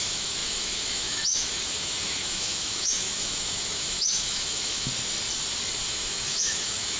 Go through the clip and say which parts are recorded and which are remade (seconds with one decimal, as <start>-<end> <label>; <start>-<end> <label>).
0.0-4.9 remade; 4.9-5.9 recorded; 5.9-7.0 remade